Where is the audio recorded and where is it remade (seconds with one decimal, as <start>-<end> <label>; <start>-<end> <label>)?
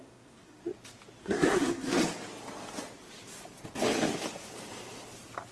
0.0-0.6 remade; 0.6-1.2 recorded; 1.2-2.0 remade; 2.0-5.5 recorded